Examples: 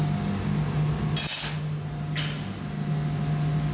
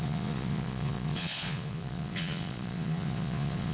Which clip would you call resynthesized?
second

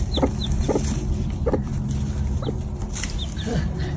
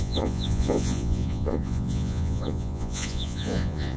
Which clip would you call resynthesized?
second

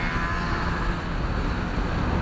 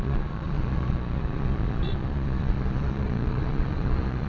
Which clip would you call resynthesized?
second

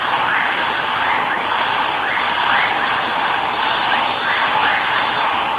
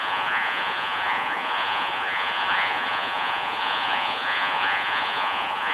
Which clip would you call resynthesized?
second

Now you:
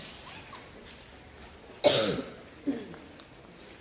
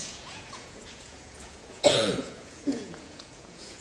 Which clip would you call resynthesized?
second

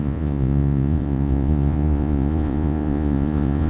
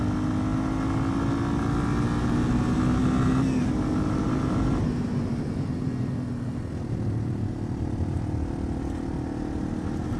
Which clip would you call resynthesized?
first